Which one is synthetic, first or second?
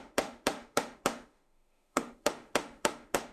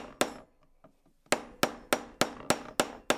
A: first